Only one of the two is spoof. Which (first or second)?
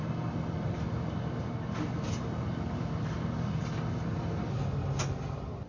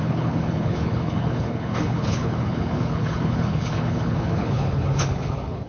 second